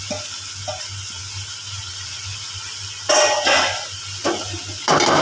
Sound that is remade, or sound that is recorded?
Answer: recorded